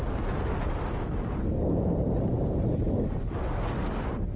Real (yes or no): yes